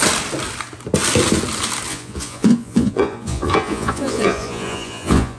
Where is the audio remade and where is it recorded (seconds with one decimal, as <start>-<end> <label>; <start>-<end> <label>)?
0.0-1.9 recorded; 1.9-5.4 remade